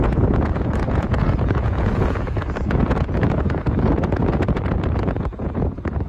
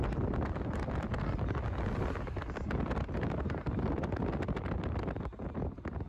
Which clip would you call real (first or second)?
second